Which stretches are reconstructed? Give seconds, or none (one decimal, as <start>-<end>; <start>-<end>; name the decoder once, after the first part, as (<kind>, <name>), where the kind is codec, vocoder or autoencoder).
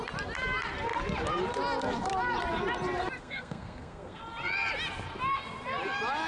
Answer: 3.2-4.2 (codec, SNAC)